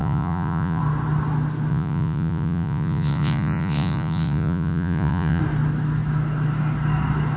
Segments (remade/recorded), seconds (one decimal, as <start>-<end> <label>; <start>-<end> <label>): 0.0-0.8 remade; 0.8-1.7 recorded; 1.7-5.4 remade; 5.4-7.4 recorded